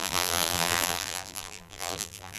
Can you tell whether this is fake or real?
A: fake